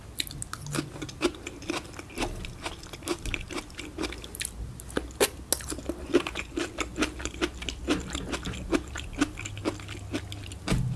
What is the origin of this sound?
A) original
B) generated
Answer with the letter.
A